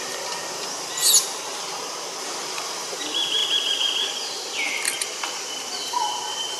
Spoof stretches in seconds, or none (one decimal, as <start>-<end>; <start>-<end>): 0.0-1.0; 2.2-6.6

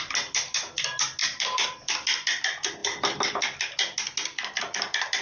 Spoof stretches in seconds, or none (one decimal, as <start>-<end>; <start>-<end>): none

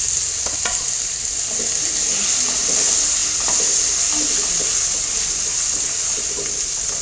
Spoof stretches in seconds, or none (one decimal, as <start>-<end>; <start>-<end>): none

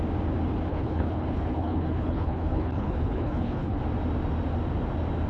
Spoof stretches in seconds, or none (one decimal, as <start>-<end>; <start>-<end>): 0.7-3.8